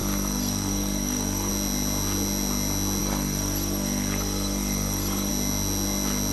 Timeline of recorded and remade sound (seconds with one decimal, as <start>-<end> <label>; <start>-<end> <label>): 0.0-1.5 remade; 1.5-3.0 recorded; 3.0-5.3 remade; 5.3-6.3 recorded